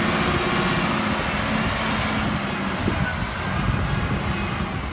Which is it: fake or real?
real